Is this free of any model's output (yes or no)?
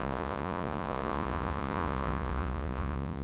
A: no